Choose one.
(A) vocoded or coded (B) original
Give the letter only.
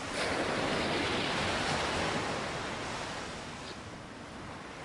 B